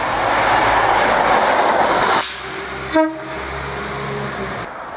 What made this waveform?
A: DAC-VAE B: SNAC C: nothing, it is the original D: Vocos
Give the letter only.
C